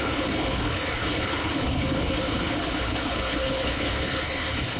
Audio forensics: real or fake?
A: fake